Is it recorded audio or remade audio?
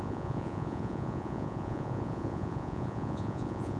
remade